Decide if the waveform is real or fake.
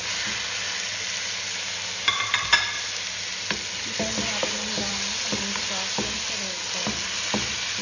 real